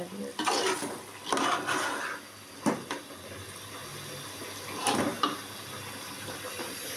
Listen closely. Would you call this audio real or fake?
real